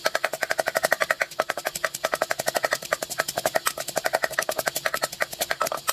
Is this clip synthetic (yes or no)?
no